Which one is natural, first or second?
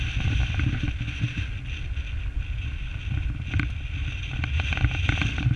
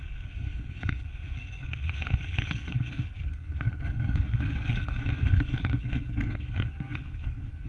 first